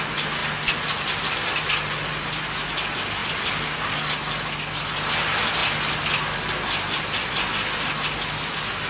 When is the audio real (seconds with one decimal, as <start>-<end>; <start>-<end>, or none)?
0.0-8.9